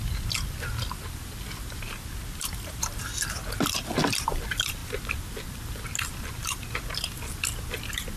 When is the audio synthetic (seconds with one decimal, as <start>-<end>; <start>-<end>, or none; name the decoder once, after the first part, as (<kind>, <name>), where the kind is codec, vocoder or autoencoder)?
none